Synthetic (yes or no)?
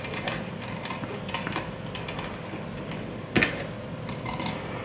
no